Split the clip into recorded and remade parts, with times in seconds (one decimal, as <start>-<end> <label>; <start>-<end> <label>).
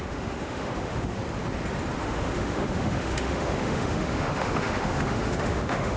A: 0.0-1.2 remade; 1.2-2.0 recorded; 2.0-6.0 remade